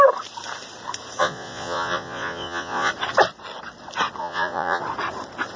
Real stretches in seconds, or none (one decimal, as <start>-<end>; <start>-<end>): 0.0-1.2; 2.9-4.2; 4.8-5.6